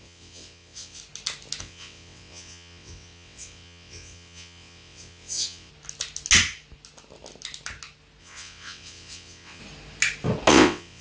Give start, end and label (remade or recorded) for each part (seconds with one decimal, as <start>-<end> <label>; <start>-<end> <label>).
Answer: 0.0-1.0 remade; 1.0-1.6 recorded; 1.6-5.7 remade; 5.7-8.2 recorded; 8.2-9.6 remade; 9.6-10.5 recorded; 10.5-11.0 remade